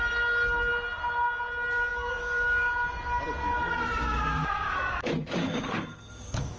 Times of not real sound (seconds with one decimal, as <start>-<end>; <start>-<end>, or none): 1.9-2.7; 4.0-6.6